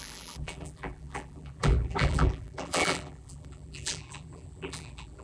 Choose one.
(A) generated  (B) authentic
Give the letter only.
A